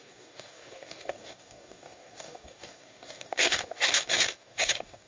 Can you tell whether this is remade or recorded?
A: remade